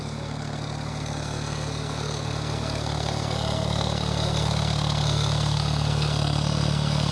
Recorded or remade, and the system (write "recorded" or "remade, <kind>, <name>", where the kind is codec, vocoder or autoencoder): remade, codec, SNAC